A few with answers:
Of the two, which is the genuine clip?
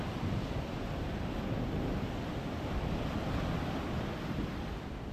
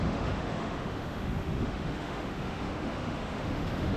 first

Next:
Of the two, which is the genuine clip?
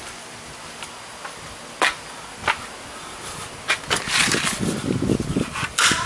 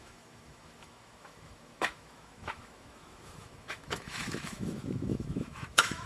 first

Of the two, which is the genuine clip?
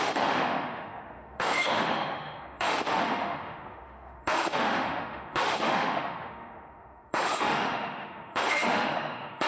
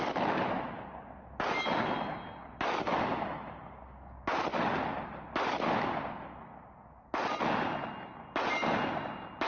second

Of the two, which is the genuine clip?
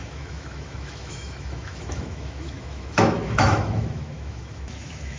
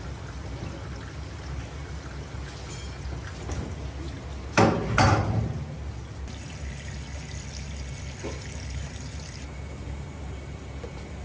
second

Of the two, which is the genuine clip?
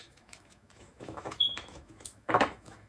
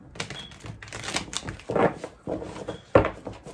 second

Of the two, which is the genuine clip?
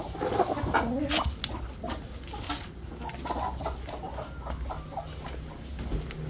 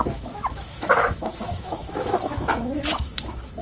first